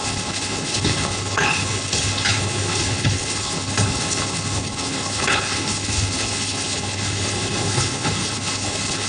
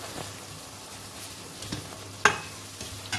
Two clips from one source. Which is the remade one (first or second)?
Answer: first